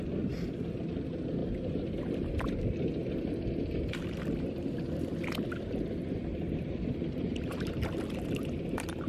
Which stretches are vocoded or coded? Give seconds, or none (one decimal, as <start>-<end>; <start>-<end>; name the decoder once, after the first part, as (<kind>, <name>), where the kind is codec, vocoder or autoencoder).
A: 6.3-7.8 (vocoder, BigVGAN v2)